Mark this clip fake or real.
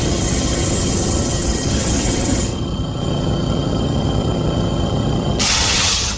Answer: fake